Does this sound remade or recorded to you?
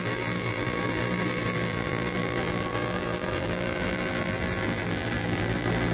remade